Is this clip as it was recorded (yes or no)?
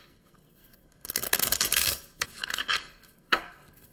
no